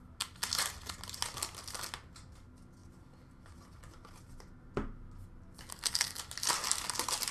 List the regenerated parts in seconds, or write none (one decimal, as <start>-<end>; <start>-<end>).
5.7-6.2